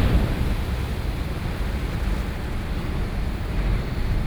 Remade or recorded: remade